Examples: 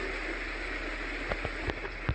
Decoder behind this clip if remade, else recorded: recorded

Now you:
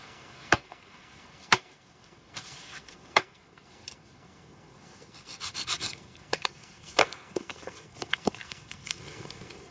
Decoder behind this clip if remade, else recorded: remade, codec, SNAC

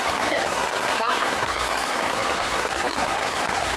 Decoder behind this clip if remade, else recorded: remade, codec, SNAC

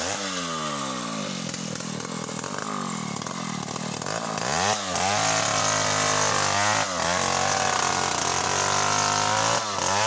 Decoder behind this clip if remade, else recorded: recorded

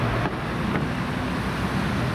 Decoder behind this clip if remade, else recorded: recorded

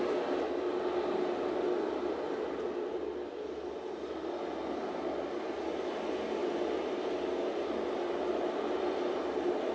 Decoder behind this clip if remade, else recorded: recorded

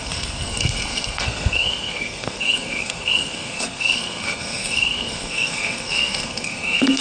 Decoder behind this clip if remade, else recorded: remade, codec, SNAC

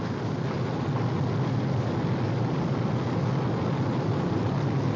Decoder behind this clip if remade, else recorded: recorded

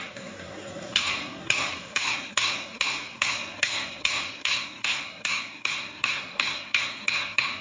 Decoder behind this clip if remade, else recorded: remade, codec, SNAC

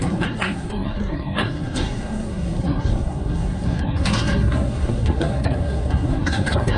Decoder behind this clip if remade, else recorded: remade, codec, SNAC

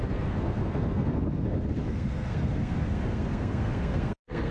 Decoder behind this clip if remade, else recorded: remade, codec, SNAC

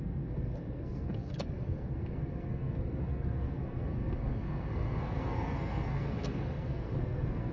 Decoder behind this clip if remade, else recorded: remade, codec, SNAC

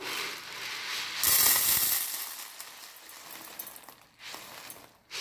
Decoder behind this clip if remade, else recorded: recorded